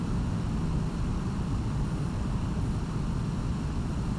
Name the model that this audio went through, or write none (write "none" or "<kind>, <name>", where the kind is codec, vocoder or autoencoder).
none